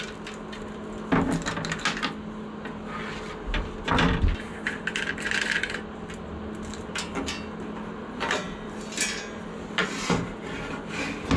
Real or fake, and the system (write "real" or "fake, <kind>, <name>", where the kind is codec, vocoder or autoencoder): real